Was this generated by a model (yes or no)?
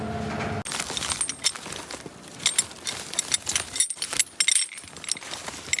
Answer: no